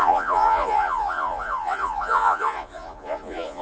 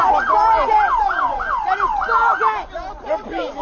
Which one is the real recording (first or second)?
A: second